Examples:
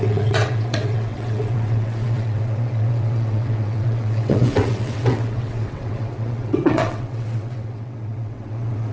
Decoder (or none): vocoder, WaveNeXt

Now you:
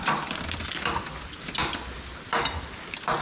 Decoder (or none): none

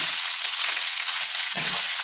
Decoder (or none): vocoder, WaveNeXt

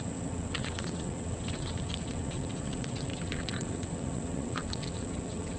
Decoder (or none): vocoder, WaveNeXt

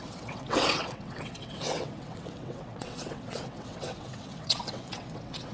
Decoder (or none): vocoder, WaveNeXt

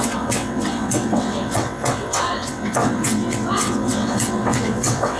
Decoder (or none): vocoder, WaveNeXt